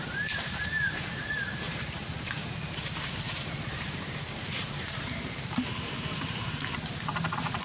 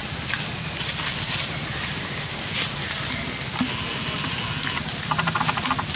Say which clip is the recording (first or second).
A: second